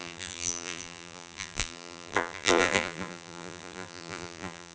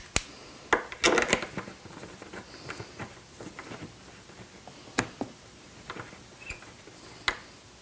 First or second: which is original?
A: second